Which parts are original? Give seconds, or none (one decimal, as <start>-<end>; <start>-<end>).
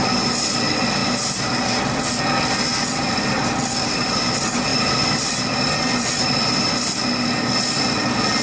0.0-8.4